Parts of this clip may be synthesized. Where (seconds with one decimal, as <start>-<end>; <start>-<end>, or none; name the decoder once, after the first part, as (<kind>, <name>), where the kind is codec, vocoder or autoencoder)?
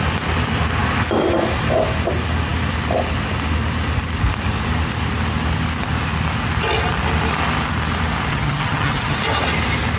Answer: 8.3-9.2 (vocoder, HiFi-GAN)